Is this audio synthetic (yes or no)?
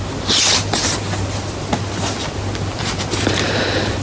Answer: no